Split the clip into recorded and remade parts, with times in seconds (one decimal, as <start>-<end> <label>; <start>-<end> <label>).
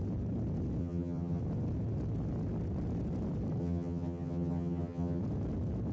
0.0-0.8 recorded; 0.8-1.4 remade; 1.4-3.6 recorded; 3.6-5.2 remade; 5.2-5.9 recorded